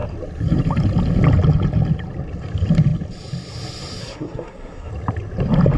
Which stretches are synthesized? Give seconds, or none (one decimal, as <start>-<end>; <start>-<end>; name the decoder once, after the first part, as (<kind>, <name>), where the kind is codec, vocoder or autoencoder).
4.0-4.9 (codec, SNAC)